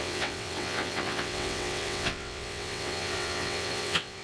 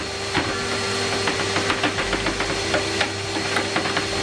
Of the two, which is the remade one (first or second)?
first